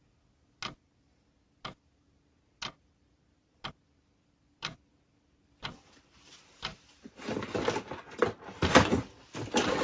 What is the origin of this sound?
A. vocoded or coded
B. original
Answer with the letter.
B